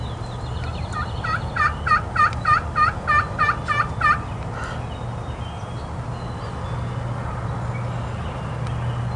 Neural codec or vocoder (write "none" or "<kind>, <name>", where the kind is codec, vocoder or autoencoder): none